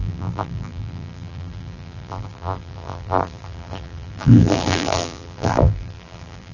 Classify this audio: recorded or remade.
remade